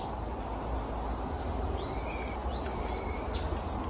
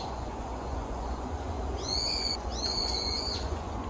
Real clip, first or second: first